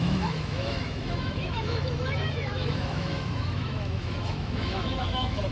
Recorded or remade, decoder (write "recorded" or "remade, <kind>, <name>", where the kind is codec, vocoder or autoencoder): remade, autoencoder, DAC-VAE